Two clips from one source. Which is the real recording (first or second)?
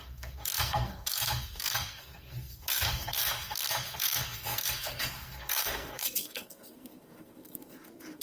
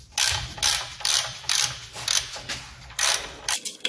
second